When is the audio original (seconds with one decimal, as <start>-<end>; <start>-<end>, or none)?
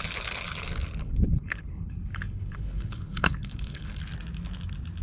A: 0.0-1.0; 4.0-5.0